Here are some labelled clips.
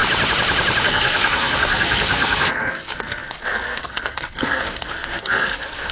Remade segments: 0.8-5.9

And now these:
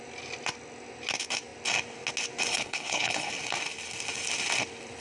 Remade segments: 2.5-3.3

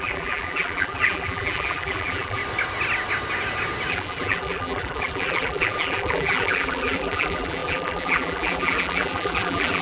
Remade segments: 0.0-2.4; 3.9-9.8

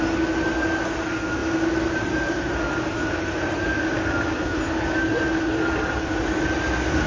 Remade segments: none

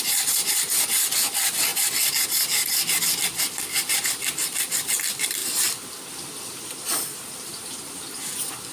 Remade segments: 0.0-1.7; 3.0-5.4; 6.1-8.7